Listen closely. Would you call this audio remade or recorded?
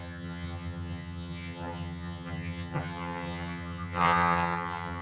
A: remade